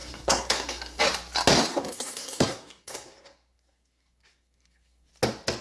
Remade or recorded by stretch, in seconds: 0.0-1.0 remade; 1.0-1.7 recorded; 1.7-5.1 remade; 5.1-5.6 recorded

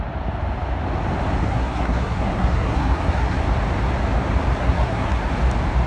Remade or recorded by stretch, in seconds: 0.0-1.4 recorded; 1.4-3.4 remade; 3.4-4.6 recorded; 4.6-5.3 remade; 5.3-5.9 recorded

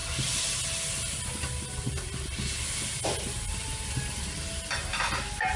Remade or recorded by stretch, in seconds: 0.0-5.6 recorded